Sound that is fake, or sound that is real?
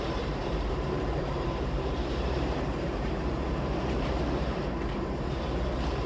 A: fake